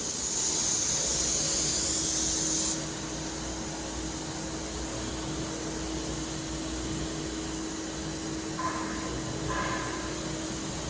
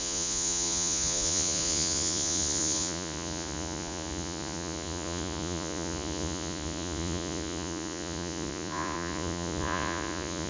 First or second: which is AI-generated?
second